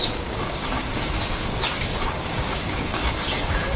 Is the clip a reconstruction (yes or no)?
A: yes